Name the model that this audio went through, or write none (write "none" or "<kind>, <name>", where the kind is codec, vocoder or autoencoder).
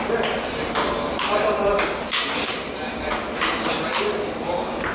none